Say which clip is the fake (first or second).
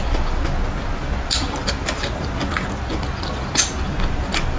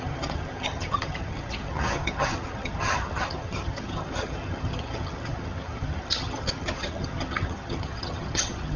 second